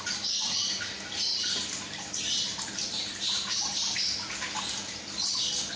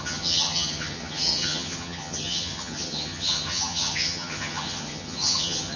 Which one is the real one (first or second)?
first